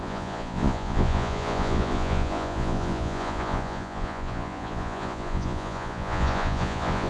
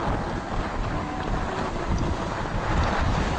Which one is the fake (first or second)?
first